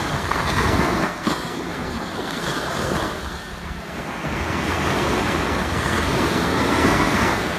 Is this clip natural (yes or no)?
no